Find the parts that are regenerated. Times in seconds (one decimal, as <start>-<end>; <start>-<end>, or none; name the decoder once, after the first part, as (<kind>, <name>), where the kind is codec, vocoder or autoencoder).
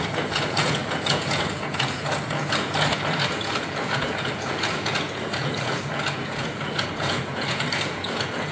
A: 0.0-8.5 (vocoder, Vocos)